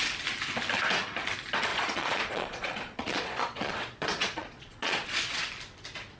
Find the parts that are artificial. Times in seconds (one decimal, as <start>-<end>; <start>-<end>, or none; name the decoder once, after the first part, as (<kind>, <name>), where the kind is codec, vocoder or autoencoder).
1.7-5.4 (vocoder, Vocos)